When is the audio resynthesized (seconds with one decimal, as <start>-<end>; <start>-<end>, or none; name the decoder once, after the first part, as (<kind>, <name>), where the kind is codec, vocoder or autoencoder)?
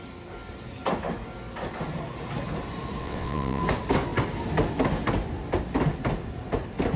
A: 3.0-3.6 (vocoder, WaveNeXt)